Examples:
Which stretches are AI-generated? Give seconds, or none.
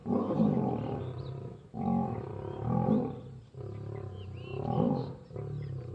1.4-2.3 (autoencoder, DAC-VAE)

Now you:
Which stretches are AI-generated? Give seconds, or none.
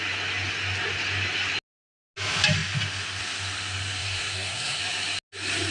4.0-4.8 (codec, SNAC)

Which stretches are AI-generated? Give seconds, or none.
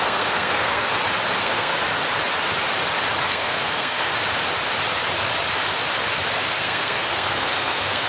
0.0-0.9 (codec, SNAC); 1.4-1.8; 3.2-4.1; 6.5-8.1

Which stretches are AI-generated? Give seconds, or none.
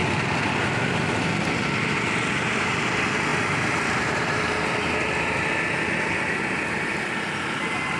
3.3-5.5 (vocoder, BigVGAN v2)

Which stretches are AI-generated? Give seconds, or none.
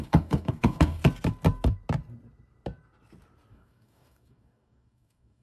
0.0-1.0 (codec, DAC); 3.5-5.4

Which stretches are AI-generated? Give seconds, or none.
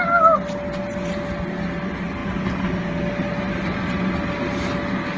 none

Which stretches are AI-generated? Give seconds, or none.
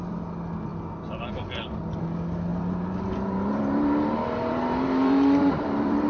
2.5-6.1 (vocoder, BigVGAN v2)